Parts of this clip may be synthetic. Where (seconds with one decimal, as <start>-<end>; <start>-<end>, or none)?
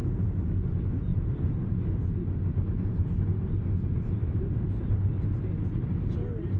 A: 0.0-0.7; 1.1-1.8; 2.5-3.1; 4.2-5.5